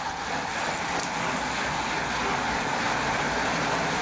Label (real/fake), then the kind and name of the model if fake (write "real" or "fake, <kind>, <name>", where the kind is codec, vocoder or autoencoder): real